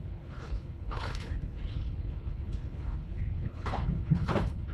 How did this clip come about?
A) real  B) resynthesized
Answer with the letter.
B